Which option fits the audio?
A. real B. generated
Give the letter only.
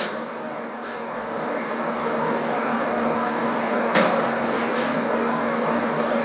B